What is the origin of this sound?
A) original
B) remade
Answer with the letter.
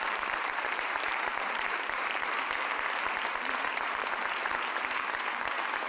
B